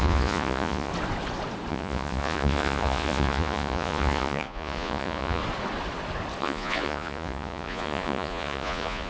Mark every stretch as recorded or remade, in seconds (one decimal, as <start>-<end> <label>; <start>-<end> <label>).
0.0-0.9 remade; 0.9-1.7 recorded; 1.7-5.4 remade; 5.4-6.4 recorded; 6.4-9.1 remade